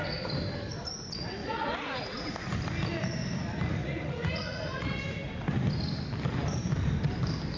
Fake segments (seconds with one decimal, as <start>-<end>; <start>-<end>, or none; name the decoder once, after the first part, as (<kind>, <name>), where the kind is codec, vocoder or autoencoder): 1.4-2.3 (vocoder, Vocos); 3.8-5.0

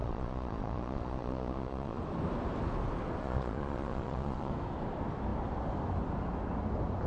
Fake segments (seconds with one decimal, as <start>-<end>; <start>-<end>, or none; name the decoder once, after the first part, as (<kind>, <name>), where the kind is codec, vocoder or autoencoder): 0.0-2.0 (vocoder, Vocos); 3.2-4.5

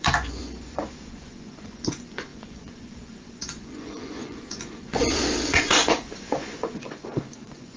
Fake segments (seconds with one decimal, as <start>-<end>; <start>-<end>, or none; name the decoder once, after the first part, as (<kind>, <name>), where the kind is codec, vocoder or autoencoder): 0.0-7.8 (vocoder, Vocos)

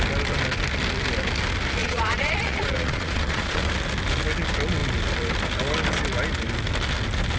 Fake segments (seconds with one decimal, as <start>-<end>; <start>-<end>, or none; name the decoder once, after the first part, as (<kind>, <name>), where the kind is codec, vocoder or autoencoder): 1.8-3.6 (vocoder, Vocos)

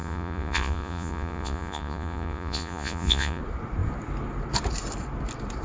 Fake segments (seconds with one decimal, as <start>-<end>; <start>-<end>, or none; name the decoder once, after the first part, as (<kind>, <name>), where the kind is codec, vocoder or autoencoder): 0.0-3.4 (vocoder, Vocos)

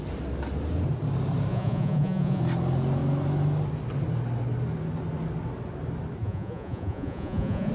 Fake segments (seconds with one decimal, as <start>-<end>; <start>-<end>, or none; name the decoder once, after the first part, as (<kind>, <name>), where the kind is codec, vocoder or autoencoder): 1.5-2.4 (vocoder, Vocos); 6.2-7.7